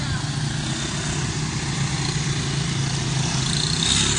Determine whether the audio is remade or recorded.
recorded